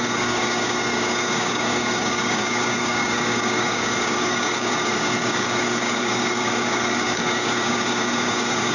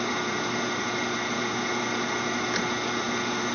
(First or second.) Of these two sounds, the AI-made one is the first